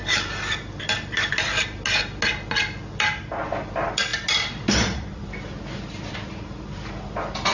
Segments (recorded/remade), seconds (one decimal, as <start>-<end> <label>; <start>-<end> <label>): 0.0-7.5 recorded